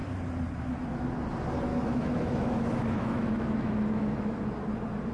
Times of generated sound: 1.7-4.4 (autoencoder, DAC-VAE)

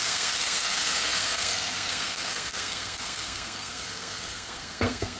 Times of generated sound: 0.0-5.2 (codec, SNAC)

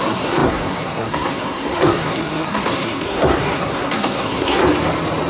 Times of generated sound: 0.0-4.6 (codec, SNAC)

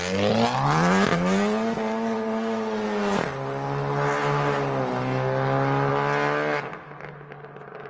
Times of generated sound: none

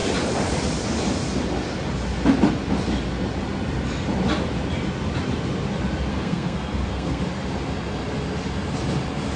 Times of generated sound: 6.1-7.2 (codec, SNAC)

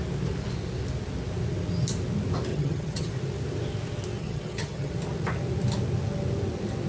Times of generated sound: 2.5-3.1 (vocoder, HiFi-GAN); 4.2-4.9

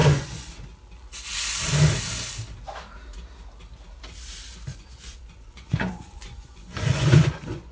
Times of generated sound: 0.0-0.5 (vocoder, Vocos); 4.7-7.7

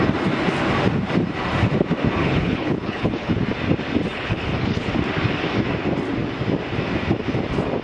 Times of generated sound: 2.2-3.3 (codec, HILCodec); 4.1-4.9